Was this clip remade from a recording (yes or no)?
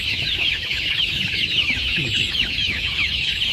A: yes